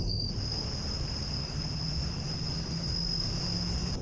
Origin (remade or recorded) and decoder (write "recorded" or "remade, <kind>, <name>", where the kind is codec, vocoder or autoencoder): recorded